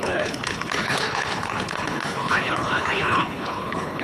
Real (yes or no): no